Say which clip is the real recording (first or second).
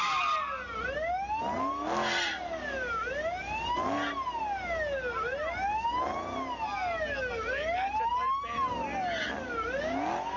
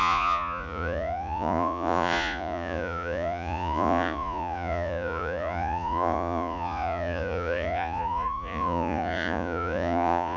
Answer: first